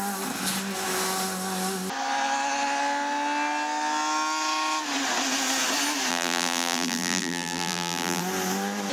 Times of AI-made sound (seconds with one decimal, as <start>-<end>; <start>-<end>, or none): 6.1-8.2